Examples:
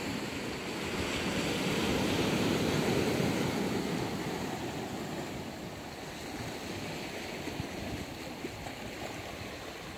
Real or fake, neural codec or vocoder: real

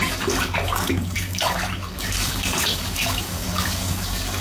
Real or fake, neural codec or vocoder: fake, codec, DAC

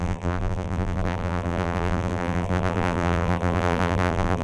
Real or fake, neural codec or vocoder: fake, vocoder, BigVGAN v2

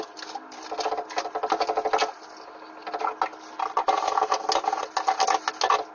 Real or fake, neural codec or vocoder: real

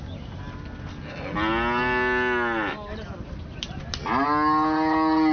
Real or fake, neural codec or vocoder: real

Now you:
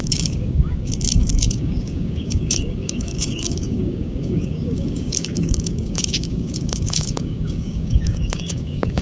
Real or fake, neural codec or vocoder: fake, codec, DAC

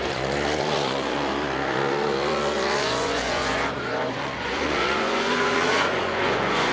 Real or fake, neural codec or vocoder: fake, vocoder, Vocos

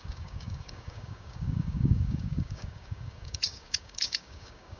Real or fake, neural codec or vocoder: fake, codec, DAC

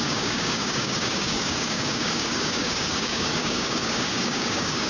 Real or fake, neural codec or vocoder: fake, codec, DAC